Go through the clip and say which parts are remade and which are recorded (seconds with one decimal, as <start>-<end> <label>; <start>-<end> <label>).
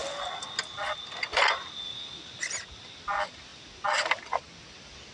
0.0-5.1 recorded